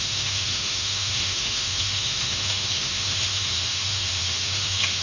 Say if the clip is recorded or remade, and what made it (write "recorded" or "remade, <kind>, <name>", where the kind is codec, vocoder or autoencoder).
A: remade, autoencoder, DAC-VAE